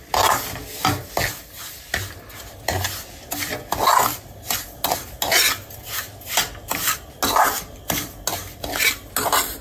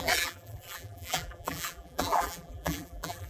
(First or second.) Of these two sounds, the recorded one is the first